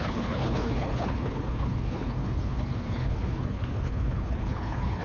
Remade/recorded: remade